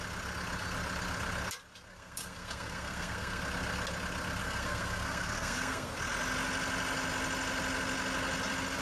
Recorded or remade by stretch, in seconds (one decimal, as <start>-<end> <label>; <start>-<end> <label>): 0.0-1.9 recorded; 1.9-3.4 remade; 3.4-4.4 recorded; 4.4-5.9 remade; 5.9-8.8 recorded